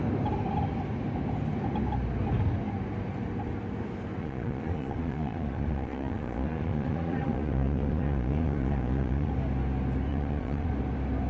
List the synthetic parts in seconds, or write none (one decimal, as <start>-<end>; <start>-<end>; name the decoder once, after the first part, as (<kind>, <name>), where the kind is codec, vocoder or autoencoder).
4.2-9.3 (vocoder, Vocos); 10.1-10.7